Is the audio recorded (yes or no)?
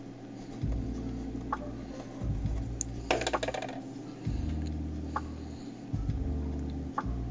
yes